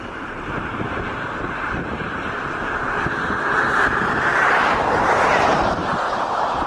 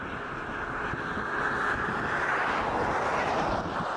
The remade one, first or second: first